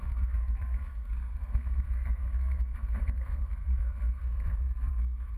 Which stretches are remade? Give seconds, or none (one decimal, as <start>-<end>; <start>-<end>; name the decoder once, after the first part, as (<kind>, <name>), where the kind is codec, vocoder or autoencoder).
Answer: 0.0-5.4 (codec, SNAC)